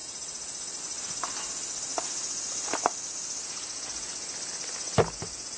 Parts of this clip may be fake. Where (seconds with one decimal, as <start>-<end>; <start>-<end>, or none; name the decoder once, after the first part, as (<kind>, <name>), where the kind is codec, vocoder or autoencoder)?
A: none